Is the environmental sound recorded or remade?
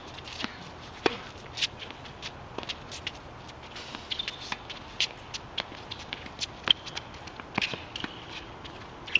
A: recorded